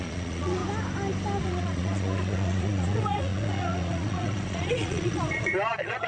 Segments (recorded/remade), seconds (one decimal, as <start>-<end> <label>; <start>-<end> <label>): 0.0-0.6 remade; 0.6-1.4 recorded; 1.4-6.1 remade